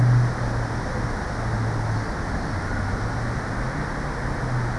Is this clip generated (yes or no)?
no